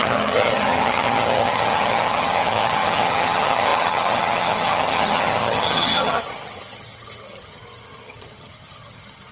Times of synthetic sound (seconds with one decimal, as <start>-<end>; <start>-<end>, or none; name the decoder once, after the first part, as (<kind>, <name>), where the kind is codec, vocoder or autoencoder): 0.0-9.3 (vocoder, HiFi-GAN)